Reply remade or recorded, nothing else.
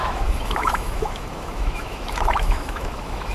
remade